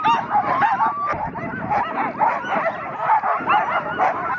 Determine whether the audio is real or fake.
real